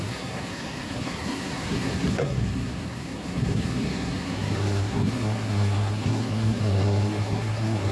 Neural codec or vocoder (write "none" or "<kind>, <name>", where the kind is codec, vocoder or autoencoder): codec, SNAC